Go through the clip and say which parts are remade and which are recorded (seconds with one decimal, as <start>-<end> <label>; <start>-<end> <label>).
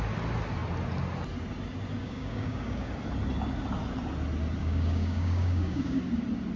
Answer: 0.0-2.0 recorded; 2.0-2.9 remade; 2.9-4.6 recorded; 4.6-6.0 remade; 6.0-6.6 recorded